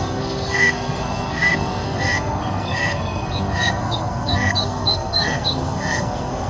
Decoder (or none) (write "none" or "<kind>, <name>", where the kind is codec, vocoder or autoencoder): codec, SNAC